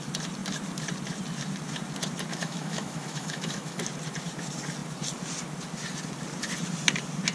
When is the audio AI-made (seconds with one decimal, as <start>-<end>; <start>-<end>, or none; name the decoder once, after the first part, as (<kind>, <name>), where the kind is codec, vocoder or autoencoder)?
2.3-3.8 (autoencoder, DAC-VAE)